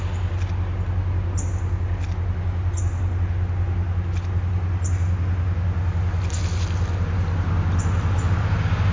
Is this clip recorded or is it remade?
recorded